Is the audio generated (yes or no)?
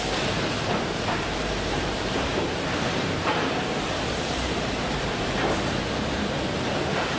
yes